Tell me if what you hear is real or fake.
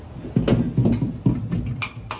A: real